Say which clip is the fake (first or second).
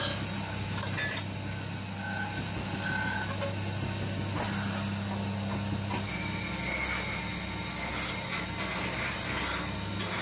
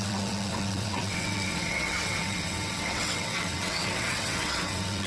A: second